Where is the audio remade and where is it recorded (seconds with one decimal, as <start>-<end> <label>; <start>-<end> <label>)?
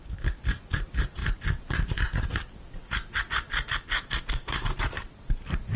0.0-5.8 recorded